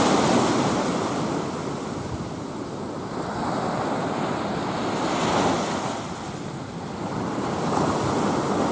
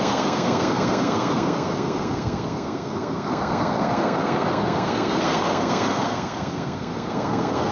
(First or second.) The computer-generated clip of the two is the second